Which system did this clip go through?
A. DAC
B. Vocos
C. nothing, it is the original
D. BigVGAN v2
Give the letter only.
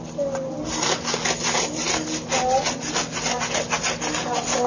C